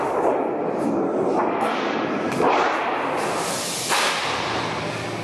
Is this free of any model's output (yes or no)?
yes